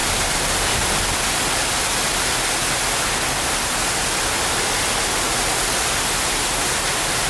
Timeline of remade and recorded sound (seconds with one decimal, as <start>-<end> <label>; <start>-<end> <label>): 0.0-7.3 recorded